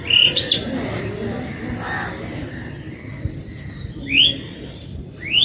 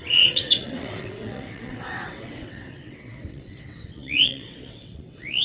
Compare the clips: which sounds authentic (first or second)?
first